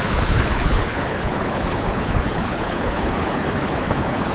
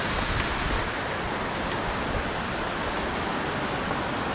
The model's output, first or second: first